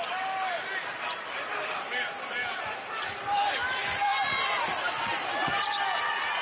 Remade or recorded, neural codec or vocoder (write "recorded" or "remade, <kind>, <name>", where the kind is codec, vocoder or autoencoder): recorded